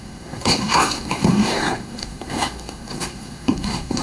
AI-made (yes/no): yes